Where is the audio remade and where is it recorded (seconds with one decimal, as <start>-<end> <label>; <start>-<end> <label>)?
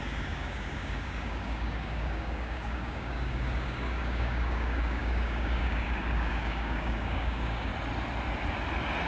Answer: 0.0-7.7 remade; 7.7-9.1 recorded